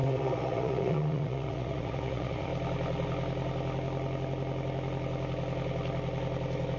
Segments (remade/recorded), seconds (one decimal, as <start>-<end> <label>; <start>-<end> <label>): 0.0-2.5 remade; 2.5-6.8 recorded